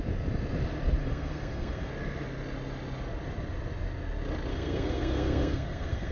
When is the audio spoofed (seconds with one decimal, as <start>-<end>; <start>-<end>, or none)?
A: 1.0-1.9; 4.5-6.1